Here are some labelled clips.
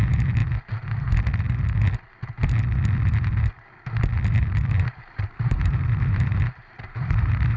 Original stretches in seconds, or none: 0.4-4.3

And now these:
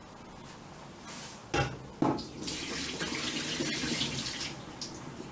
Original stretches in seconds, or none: 0.0-5.3

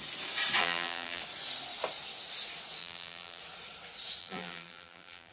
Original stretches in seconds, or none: 0.0-0.6; 1.2-2.8; 3.4-4.2

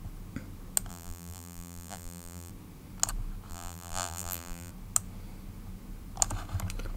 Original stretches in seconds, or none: 0.0-0.9; 2.5-3.5; 4.7-7.0

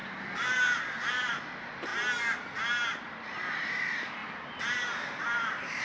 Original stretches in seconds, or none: 1.9-2.9; 4.2-5.0

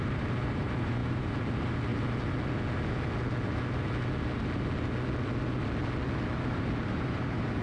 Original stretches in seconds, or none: 1.9-6.2

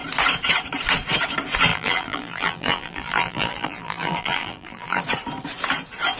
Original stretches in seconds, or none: 0.0-1.7; 5.0-6.2

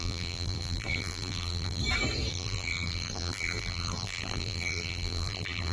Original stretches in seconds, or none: 1.8-2.3